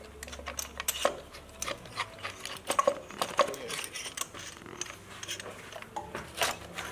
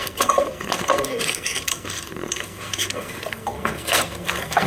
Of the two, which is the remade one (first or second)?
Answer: second